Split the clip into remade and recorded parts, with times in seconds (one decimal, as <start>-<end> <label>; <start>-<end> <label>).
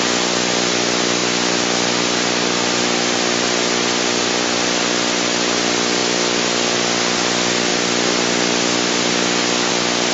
0.0-10.1 recorded